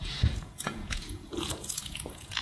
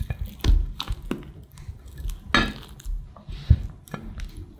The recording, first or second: second